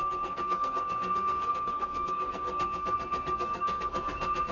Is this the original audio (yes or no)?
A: no